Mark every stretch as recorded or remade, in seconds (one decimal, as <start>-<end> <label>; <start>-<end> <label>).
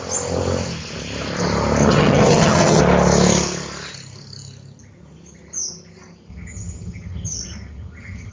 0.0-1.8 recorded; 1.8-2.8 remade; 2.8-6.3 recorded; 6.3-8.3 remade